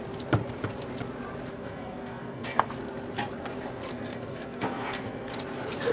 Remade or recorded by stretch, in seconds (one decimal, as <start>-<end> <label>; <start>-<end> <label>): 0.0-1.5 recorded; 1.5-2.7 remade; 2.7-3.9 recorded; 3.9-5.3 remade; 5.3-5.9 recorded